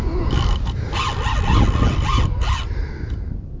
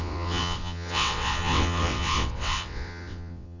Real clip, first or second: first